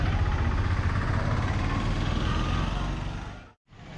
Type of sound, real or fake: real